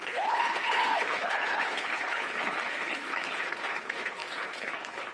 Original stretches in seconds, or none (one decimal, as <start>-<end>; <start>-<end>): none